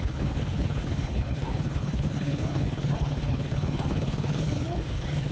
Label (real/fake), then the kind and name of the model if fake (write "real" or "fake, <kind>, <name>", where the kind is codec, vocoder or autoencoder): fake, codec, HILCodec